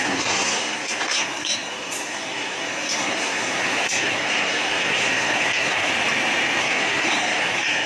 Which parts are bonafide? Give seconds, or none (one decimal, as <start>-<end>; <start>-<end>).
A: 5.9-6.6